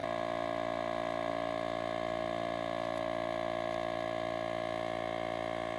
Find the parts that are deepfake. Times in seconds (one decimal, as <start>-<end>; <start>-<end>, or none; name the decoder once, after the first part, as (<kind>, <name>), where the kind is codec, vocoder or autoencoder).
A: none

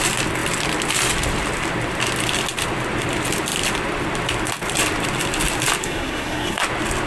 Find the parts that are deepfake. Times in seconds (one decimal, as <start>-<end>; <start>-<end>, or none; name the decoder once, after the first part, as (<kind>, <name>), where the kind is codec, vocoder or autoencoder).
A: 5.8-6.6 (codec, SNAC)

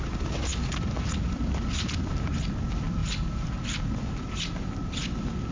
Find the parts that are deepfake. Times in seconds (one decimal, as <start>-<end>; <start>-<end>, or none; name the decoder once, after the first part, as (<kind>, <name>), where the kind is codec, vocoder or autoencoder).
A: none

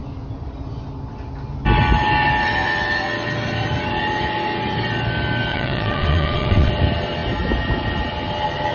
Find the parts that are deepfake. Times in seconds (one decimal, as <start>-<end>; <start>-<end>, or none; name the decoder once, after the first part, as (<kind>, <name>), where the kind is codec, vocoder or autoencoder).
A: 5.5-6.7 (vocoder, WaveNeXt)

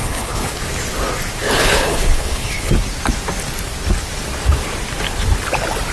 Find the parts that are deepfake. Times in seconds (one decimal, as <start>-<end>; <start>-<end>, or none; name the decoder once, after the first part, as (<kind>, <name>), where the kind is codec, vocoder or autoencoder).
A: 0.0-0.6 (codec, HILCodec); 1.6-2.7